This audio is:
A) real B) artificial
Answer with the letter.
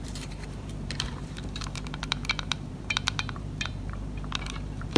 B